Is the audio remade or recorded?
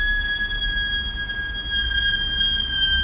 recorded